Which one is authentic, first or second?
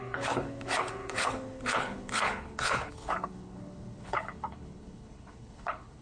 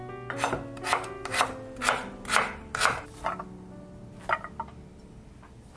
second